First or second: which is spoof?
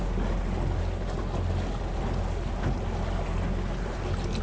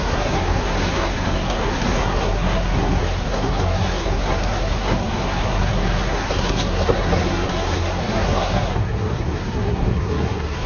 second